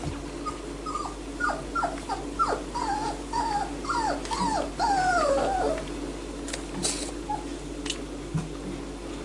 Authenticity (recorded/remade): recorded